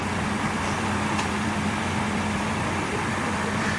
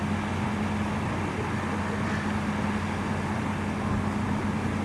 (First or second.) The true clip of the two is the second